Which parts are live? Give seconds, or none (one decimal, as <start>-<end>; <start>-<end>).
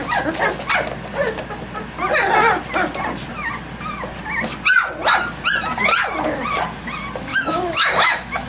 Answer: 0.0-7.3